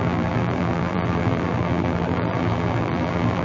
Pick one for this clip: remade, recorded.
remade